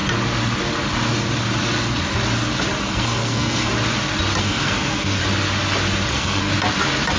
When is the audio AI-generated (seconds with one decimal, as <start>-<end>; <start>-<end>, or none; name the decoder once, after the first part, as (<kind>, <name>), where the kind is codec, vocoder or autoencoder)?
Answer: 2.8-3.7 (codec, SNAC); 4.4-5.2; 6.1-6.5